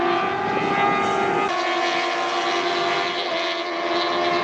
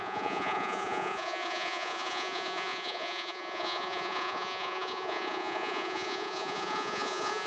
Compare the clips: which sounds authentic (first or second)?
first